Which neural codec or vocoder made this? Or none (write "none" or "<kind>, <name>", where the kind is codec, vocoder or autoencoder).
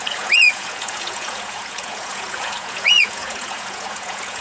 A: vocoder, Vocos